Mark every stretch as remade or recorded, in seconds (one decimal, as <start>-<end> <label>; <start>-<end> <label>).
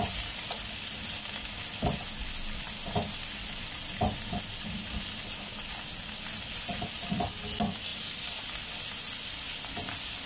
0.0-10.3 recorded